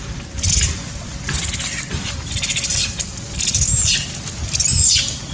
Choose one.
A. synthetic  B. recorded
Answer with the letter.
B